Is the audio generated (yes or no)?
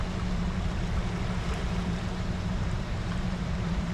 yes